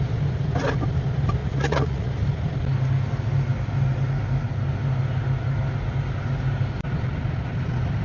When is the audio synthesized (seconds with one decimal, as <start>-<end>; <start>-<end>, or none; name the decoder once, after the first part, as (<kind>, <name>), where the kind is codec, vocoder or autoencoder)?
1.4-2.1 (vocoder, Vocos)